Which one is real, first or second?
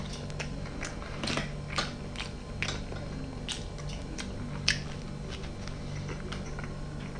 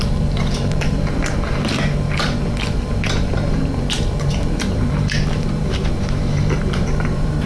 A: first